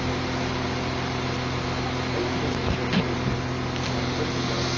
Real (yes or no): yes